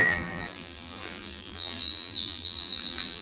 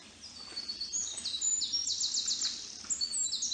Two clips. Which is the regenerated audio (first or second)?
first